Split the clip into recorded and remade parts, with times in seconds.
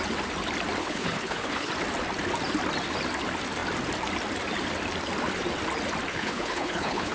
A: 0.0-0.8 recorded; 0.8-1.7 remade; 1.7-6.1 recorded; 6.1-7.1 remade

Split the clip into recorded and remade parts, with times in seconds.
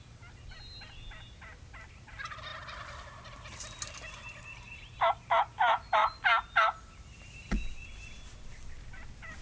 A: 0.0-9.4 recorded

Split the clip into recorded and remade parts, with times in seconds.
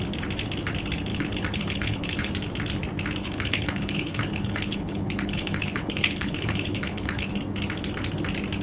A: 0.0-1.1 recorded; 1.1-2.3 remade; 2.3-3.2 recorded; 3.2-7.3 remade; 7.3-8.6 recorded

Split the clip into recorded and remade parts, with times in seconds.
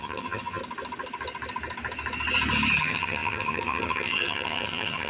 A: 0.0-0.6 remade; 0.6-2.8 recorded; 2.8-5.1 remade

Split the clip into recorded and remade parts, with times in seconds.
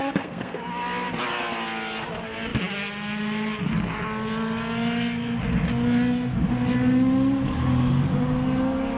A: 0.0-0.7 remade; 0.7-9.0 recorded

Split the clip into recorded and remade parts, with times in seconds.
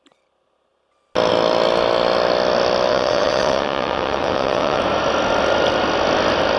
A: 0.0-2.9 recorded; 2.9-4.8 remade; 4.8-6.6 recorded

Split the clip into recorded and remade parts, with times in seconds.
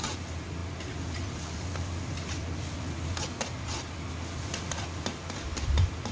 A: 0.0-6.1 recorded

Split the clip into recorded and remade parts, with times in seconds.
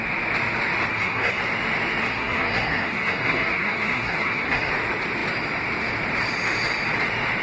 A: 0.0-0.9 recorded; 0.9-1.4 remade; 1.4-2.0 recorded; 2.0-4.7 remade; 4.7-7.4 recorded